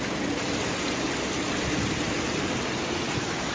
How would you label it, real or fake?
real